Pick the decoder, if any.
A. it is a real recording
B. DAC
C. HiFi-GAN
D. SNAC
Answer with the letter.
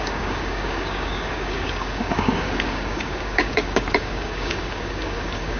B